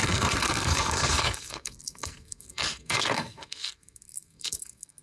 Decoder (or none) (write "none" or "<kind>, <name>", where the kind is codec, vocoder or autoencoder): codec, SNAC